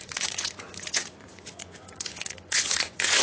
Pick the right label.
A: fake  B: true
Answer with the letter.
A